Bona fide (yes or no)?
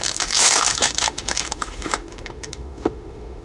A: no